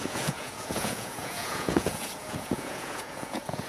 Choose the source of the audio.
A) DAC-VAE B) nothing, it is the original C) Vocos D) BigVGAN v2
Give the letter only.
C